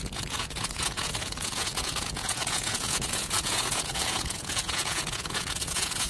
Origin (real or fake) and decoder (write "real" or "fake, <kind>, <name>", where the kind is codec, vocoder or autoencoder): fake, vocoder, Vocos